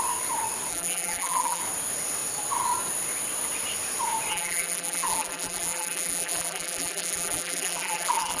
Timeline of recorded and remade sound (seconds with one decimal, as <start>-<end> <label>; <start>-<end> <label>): 0.0-0.7 recorded; 0.7-1.6 remade; 1.6-4.3 recorded; 4.3-8.4 remade